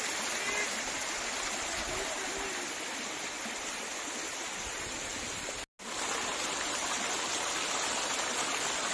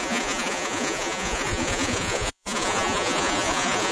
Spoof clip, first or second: second